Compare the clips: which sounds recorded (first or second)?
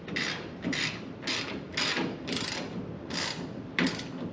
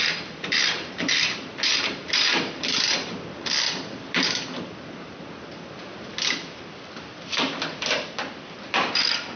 first